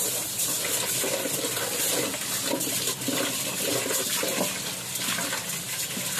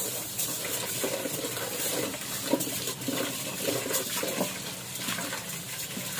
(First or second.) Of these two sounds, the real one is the first